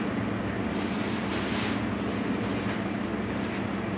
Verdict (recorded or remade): recorded